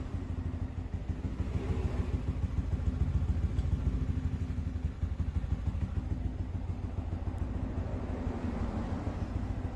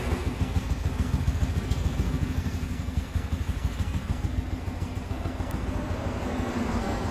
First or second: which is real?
first